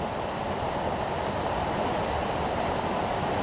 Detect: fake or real real